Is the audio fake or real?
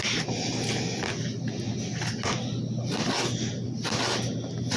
real